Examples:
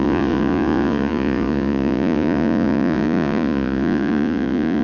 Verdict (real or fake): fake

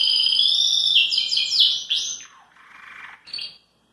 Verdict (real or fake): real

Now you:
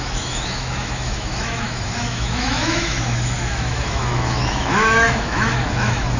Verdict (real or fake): fake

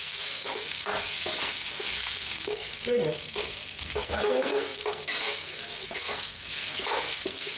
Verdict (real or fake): fake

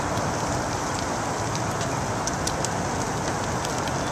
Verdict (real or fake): real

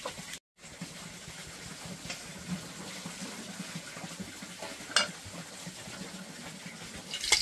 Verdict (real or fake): real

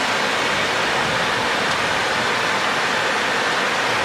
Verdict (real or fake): real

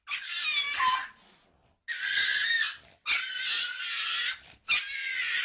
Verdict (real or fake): real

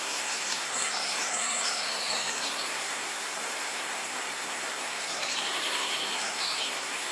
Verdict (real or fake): fake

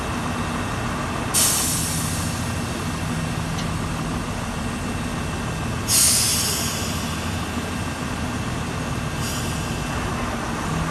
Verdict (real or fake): real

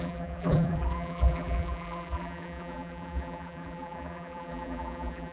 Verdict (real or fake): fake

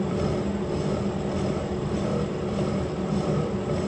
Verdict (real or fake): real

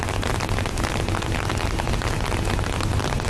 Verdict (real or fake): real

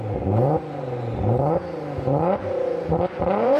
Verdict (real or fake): fake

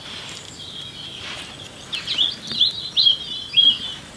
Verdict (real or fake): real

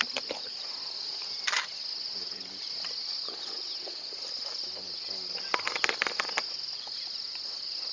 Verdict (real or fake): real